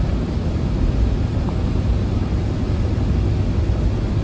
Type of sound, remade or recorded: recorded